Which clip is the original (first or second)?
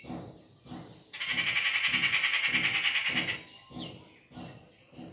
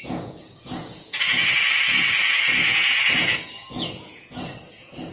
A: first